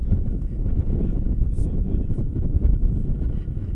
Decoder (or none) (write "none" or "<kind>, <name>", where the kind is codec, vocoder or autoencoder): none